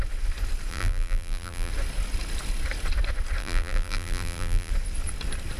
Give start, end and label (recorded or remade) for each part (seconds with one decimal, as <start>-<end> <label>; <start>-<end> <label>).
0.0-0.7 recorded; 0.7-1.7 remade; 1.7-3.4 recorded; 3.4-4.7 remade; 4.7-5.6 recorded